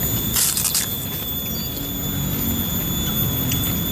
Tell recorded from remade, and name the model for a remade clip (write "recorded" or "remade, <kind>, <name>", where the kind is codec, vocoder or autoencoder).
recorded